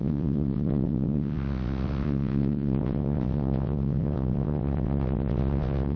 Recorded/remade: remade